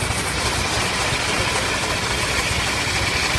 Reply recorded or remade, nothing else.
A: recorded